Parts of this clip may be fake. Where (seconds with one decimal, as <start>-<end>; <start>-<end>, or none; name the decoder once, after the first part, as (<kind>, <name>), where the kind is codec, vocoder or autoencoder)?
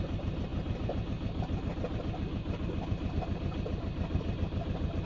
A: none